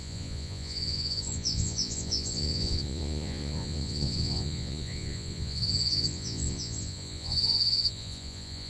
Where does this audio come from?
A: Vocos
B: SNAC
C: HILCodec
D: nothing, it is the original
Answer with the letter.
A